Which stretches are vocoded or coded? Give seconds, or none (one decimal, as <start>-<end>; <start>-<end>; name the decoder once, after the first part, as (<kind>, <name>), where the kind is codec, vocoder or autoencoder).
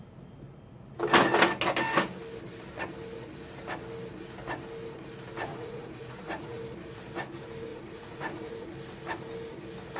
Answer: 5.5-6.6 (vocoder, Vocos); 7.7-8.5